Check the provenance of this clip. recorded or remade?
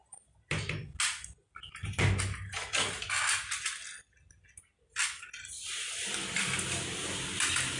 recorded